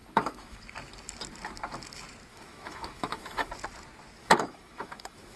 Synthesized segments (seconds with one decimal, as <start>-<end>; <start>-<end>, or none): 0.0-0.6; 2.3-3.5; 4.2-5.4